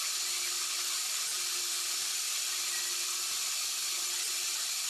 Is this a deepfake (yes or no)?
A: no